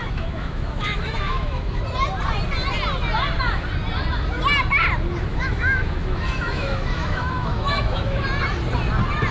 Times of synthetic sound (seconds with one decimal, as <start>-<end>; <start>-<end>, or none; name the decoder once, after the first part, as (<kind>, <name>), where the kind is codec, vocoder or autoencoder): 0.0-1.8 (autoencoder, DAC-VAE); 5.3-8.2